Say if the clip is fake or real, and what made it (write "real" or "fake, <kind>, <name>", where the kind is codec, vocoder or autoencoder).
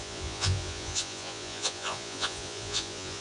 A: fake, vocoder, Vocos